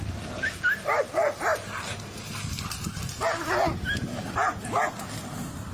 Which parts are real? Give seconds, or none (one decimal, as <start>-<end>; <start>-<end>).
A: 0.0-5.7